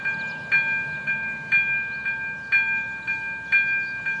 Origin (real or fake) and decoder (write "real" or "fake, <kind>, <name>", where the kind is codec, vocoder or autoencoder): real